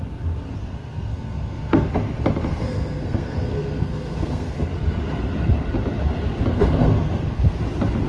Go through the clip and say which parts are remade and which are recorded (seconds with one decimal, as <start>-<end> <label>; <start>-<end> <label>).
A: 0.0-0.6 recorded; 0.6-1.9 remade; 1.9-2.5 recorded; 2.5-4.7 remade; 4.7-6.5 recorded; 6.5-7.6 remade; 7.6-8.1 recorded